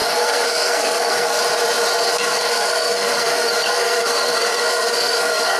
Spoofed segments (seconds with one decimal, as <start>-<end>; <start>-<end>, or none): 0.0-1.4; 2.1-5.6